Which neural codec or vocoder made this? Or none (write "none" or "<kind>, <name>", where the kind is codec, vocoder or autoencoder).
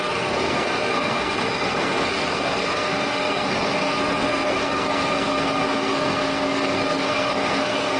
codec, SNAC